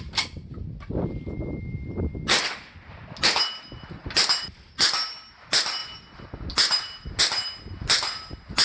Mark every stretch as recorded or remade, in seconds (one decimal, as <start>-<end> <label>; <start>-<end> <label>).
0.0-8.6 recorded